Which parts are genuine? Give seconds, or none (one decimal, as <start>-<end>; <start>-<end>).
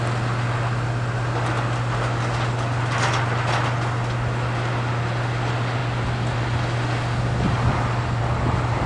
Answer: 0.0-8.9